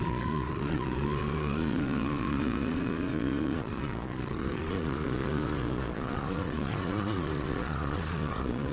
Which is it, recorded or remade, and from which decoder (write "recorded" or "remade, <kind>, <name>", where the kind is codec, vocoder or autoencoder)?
remade, vocoder, Vocos